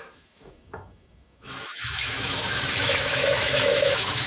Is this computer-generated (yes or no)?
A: yes